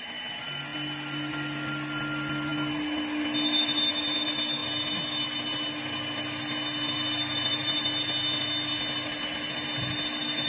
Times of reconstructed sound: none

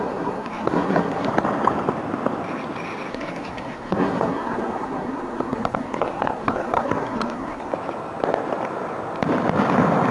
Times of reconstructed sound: 0.0-1.3 (codec, SNAC); 3.1-7.7

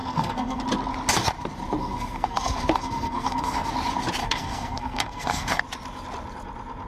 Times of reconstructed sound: 0.0-0.6 (codec, SNAC); 1.8-3.7; 4.2-5.6

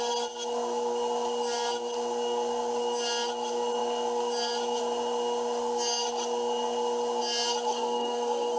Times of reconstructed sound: 7.7-8.6 (codec, SNAC)

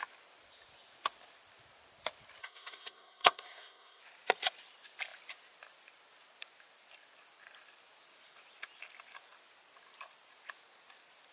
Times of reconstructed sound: 2.4-4.0 (codec, SNAC)

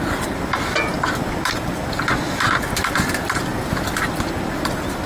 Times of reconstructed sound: none

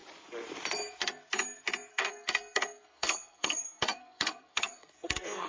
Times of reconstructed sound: 1.9-5.5 (codec, SNAC)

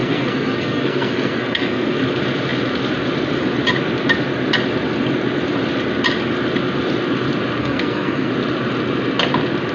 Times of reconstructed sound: 0.0-2.0 (codec, SNAC); 7.6-8.3